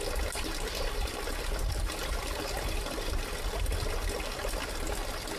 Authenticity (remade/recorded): recorded